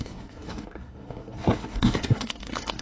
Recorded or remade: remade